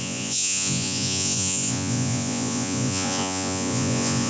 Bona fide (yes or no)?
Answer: no